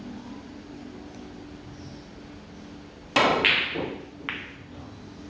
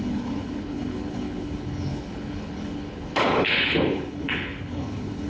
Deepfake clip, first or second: second